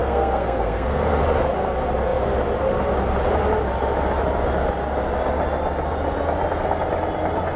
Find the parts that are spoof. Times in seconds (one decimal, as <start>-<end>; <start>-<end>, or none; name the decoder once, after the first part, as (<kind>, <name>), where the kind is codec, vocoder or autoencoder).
0.0-1.2 (codec, SNAC)